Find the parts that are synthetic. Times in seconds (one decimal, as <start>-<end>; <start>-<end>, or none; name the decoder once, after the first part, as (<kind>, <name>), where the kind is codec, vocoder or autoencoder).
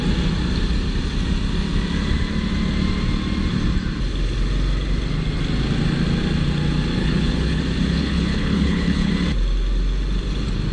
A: 7.0-7.6 (codec, HILCodec); 8.0-9.1